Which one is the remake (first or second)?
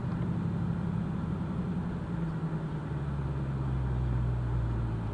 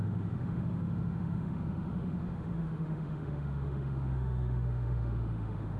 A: second